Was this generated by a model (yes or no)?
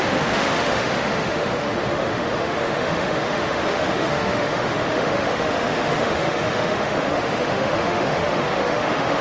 yes